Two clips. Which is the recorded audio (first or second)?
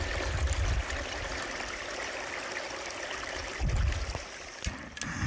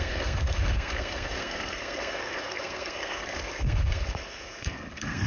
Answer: first